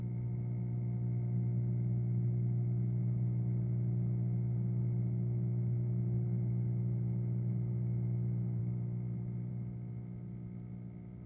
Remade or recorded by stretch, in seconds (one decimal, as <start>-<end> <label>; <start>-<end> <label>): 0.0-11.3 recorded